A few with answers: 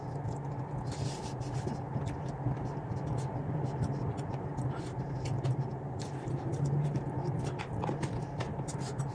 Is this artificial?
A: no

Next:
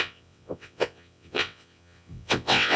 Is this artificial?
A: yes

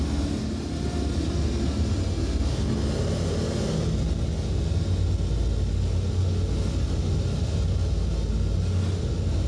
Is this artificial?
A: no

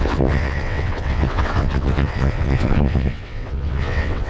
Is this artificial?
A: yes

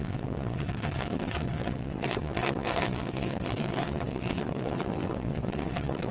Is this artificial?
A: yes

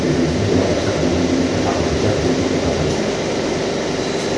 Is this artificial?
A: no